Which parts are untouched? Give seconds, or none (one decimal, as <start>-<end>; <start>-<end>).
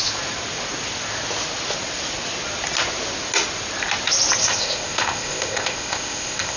0.0-4.4